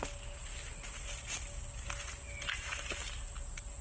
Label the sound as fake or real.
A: real